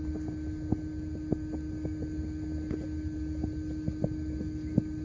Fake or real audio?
real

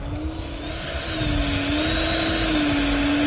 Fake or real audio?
real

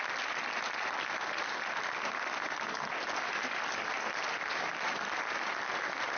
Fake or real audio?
real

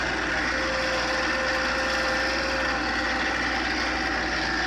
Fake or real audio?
real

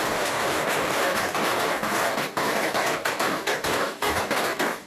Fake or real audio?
fake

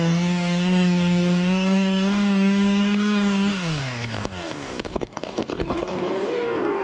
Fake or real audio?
fake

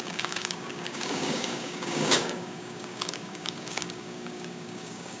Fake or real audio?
fake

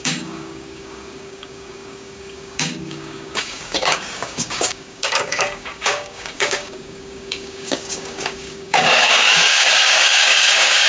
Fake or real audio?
fake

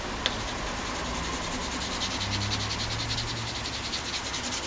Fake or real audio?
real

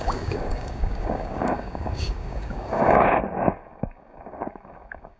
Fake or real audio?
fake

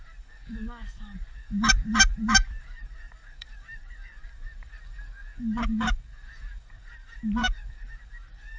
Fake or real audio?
fake